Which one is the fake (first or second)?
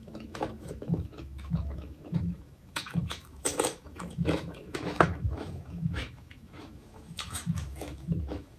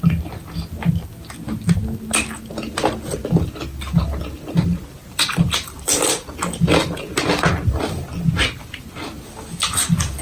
first